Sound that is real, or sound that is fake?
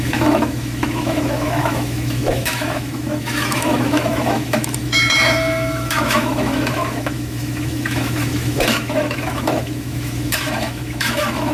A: fake